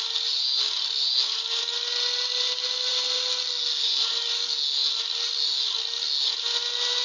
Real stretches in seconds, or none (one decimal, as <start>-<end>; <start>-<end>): 0.0-7.0